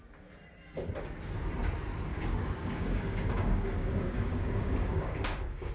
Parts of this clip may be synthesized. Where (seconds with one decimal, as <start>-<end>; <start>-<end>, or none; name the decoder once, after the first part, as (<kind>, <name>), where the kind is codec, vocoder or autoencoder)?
2.1-5.7 (codec, DAC)